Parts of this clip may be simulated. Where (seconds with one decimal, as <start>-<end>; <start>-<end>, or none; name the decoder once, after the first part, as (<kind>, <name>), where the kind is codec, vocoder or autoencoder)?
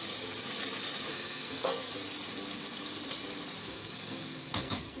1.1-1.9 (codec, SNAC); 3.6-5.0